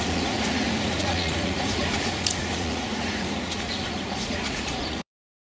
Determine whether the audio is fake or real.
fake